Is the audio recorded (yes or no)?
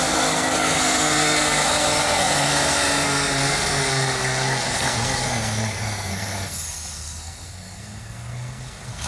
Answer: no